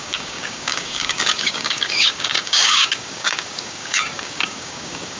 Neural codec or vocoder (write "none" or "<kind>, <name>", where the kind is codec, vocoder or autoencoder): codec, DAC